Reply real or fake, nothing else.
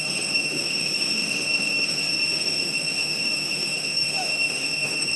fake